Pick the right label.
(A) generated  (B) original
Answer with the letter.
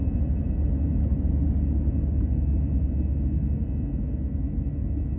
B